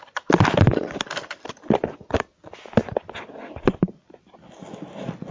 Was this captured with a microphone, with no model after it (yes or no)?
yes